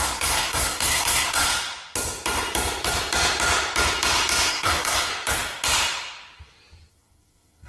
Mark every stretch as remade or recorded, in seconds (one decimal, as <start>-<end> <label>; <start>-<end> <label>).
0.0-1.5 remade; 1.5-4.5 recorded; 4.5-5.1 remade; 5.1-6.9 recorded; 6.9-7.7 remade